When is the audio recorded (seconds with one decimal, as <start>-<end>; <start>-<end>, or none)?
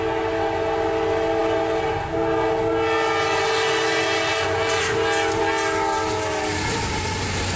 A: 0.0-7.6